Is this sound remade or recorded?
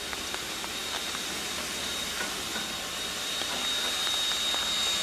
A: recorded